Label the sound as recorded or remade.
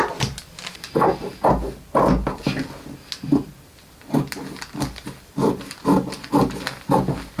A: recorded